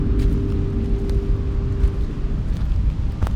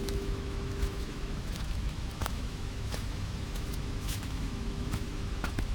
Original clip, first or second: first